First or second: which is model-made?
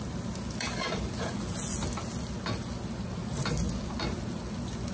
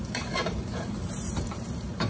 second